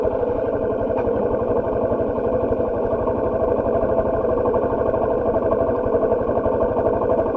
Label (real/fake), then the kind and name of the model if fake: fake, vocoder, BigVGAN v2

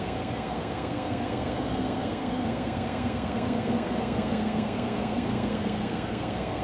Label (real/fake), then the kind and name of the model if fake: fake, codec, SNAC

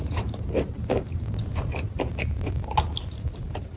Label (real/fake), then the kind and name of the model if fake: fake, vocoder, BigVGAN v2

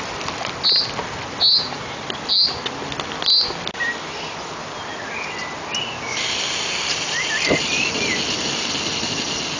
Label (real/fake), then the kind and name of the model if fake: real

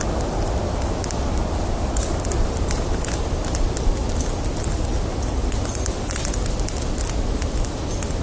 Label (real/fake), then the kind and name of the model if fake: real